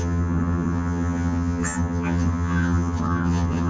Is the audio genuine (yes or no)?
no